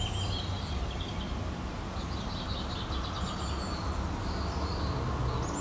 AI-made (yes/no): no